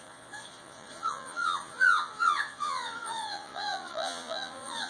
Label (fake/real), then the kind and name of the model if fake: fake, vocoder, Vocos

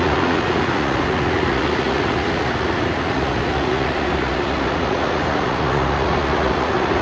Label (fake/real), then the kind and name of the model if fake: fake, vocoder, Vocos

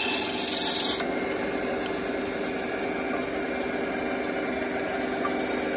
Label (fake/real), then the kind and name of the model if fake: real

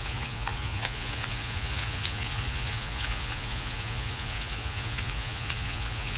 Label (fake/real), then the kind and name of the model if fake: fake, vocoder, Vocos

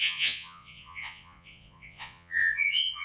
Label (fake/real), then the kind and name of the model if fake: fake, vocoder, Vocos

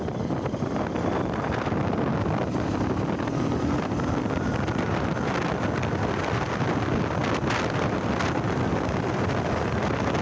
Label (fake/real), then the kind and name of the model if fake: real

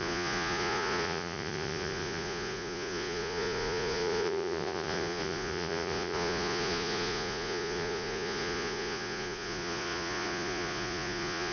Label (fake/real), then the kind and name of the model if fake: fake, vocoder, Vocos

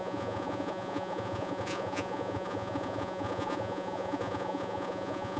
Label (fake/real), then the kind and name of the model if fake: fake, vocoder, Vocos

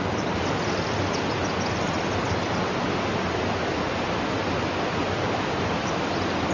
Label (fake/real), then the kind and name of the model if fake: real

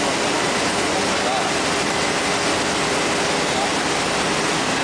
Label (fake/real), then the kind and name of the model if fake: real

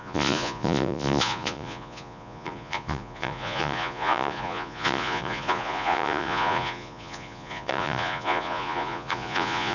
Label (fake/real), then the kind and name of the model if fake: fake, vocoder, Vocos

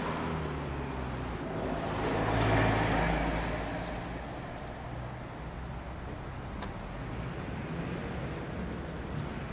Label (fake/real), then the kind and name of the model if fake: real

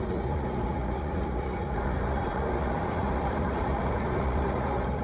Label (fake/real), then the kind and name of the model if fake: fake, vocoder, Vocos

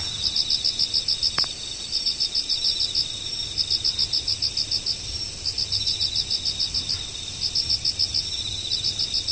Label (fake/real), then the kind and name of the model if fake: real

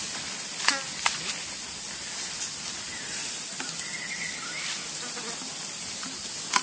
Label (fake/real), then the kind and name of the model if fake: real